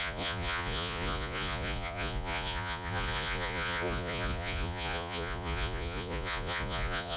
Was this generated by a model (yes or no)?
yes